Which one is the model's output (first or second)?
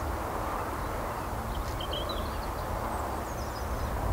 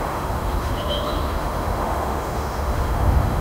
second